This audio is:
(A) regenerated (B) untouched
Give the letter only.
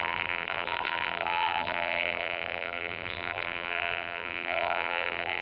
A